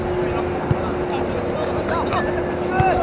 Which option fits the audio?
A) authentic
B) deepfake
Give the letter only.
A